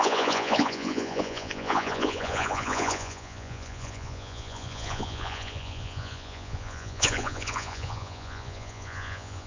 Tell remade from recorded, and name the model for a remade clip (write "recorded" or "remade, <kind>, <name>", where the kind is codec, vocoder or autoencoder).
remade, vocoder, Vocos